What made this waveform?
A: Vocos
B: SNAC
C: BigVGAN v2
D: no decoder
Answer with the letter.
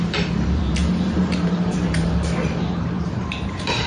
C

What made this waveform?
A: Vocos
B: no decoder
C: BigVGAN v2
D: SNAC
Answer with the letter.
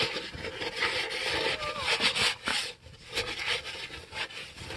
B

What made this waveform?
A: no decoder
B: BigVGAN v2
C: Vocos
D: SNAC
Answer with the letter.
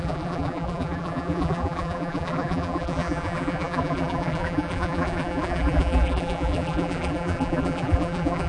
B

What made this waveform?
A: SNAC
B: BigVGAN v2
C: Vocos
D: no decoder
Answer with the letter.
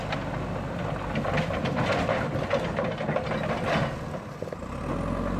D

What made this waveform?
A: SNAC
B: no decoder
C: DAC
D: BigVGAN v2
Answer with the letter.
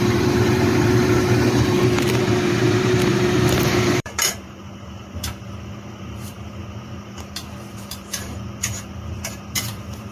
D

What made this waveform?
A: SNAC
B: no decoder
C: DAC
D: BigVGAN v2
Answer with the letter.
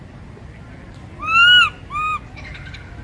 B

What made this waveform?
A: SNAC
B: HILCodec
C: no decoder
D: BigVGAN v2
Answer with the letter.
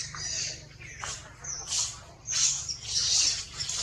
C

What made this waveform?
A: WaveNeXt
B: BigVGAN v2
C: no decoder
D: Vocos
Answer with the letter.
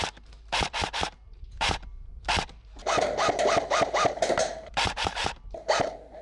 B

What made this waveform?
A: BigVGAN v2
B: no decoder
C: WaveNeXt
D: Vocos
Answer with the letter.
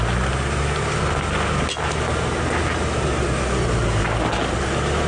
B